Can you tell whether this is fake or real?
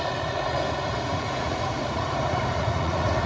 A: fake